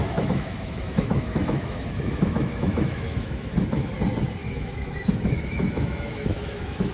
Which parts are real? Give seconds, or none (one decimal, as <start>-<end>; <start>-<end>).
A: 3.9-4.4